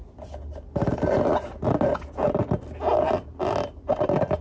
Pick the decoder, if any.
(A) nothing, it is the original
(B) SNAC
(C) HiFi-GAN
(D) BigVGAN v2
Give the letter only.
A